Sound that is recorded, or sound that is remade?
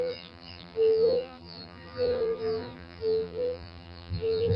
remade